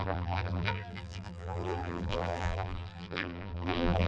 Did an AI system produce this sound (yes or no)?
yes